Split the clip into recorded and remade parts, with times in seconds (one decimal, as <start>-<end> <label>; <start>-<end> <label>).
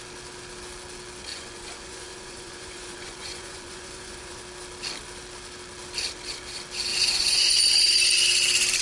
0.0-1.3 recorded; 1.3-4.4 remade; 4.4-6.9 recorded; 6.9-7.6 remade; 7.6-8.8 recorded